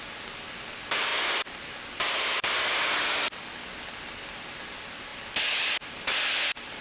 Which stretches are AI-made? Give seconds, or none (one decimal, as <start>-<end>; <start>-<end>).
none